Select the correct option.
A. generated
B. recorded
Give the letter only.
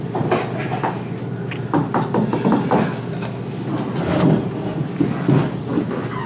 B